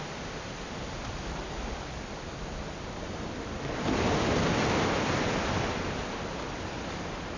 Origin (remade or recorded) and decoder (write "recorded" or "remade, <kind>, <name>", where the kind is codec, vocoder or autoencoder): recorded